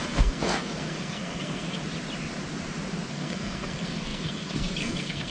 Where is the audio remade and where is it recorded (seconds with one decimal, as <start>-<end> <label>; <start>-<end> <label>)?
0.0-1.8 remade; 1.8-3.1 recorded; 3.1-5.3 remade